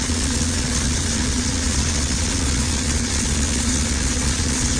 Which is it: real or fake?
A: fake